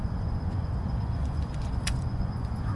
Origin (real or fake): fake